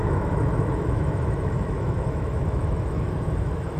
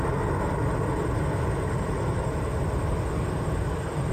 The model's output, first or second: first